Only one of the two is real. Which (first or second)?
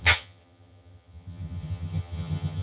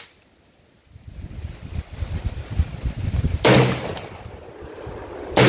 second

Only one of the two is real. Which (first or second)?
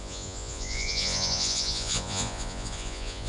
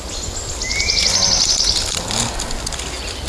second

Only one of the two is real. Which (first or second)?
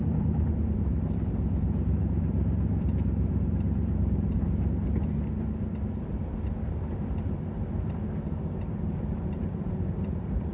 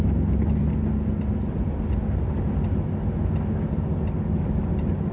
second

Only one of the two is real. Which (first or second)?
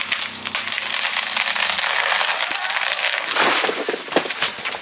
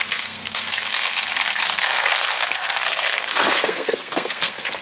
first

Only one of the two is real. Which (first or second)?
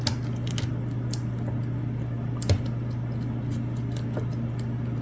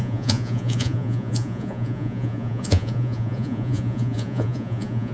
first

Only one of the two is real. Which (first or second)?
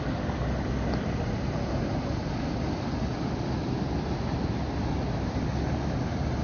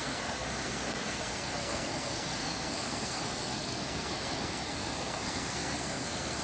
first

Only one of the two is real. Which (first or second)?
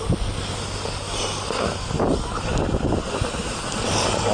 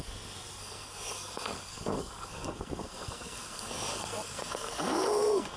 first